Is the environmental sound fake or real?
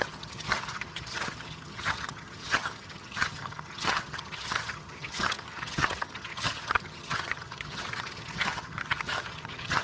fake